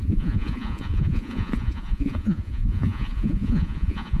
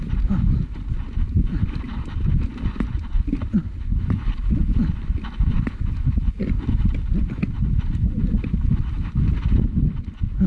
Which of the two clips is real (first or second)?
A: second